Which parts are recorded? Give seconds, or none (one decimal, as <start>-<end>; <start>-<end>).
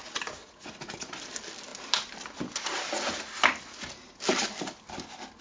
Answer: 0.0-0.4; 1.1-5.4